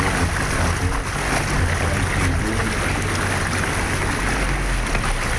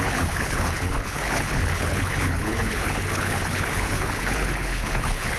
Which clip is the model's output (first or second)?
second